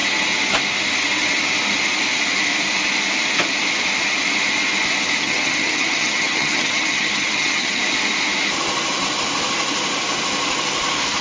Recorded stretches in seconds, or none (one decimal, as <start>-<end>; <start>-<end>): 0.0-5.2; 7.8-11.2